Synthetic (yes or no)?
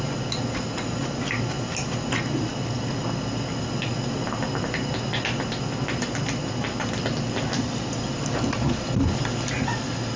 no